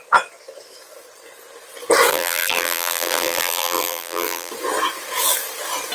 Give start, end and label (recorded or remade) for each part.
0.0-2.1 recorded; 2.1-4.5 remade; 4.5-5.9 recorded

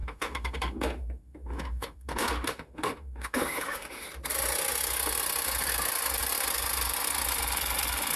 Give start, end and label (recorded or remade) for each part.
0.0-4.1 remade; 4.1-8.2 recorded

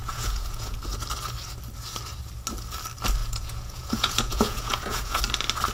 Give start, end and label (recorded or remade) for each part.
0.0-0.8 remade; 0.8-3.2 recorded; 3.2-5.2 remade; 5.2-5.7 recorded

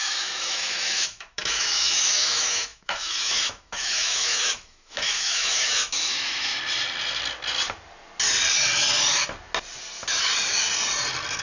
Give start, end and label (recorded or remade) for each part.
0.0-6.5 remade; 6.5-11.4 recorded